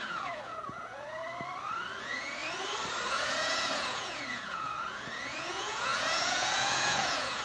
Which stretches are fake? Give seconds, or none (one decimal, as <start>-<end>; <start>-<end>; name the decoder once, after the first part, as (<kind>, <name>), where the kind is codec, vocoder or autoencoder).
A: 0.0-1.2 (vocoder, Vocos); 2.0-2.4; 3.1-7.4